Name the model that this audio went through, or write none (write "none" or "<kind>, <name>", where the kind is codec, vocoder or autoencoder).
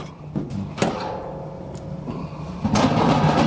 none